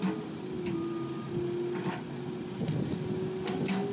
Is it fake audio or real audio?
real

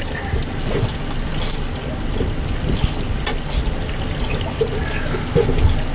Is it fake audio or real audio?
real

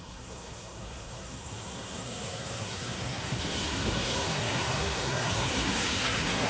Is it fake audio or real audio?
fake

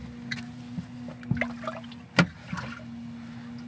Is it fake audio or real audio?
real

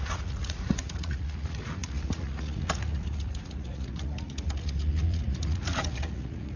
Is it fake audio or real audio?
fake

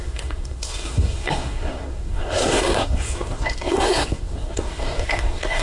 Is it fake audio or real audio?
fake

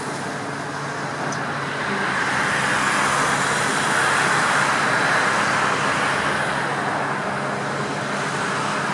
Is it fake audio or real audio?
real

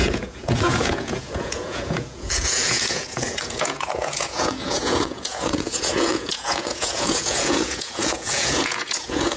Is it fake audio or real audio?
fake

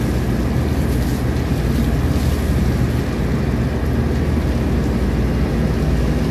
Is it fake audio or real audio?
real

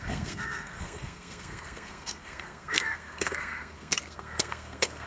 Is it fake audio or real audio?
fake